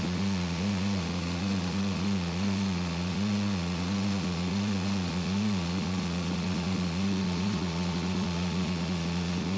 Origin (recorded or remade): remade